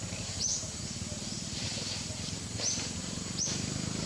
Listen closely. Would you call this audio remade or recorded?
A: remade